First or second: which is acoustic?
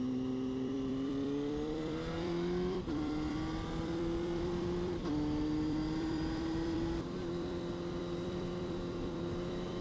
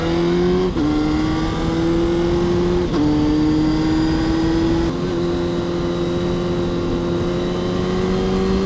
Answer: second